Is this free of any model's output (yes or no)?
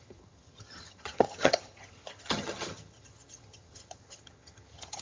no